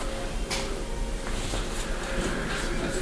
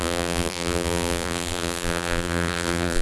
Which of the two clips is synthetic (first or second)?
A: second